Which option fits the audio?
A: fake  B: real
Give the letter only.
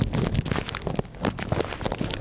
B